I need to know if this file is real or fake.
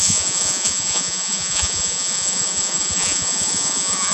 fake